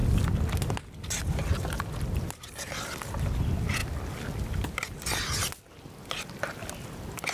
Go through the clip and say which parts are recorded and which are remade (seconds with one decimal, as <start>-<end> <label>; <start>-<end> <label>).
0.0-7.3 recorded